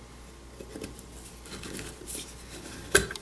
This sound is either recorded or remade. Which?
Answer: recorded